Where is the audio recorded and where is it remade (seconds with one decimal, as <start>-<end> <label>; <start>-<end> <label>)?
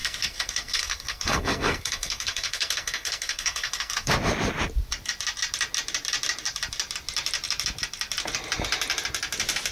0.0-4.1 remade; 4.1-9.7 recorded